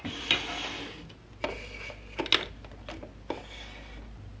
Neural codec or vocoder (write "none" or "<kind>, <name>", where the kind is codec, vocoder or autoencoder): none